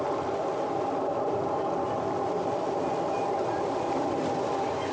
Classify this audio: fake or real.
real